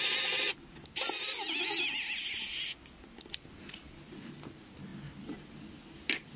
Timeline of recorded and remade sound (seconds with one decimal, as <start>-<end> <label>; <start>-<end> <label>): 0.0-6.4 recorded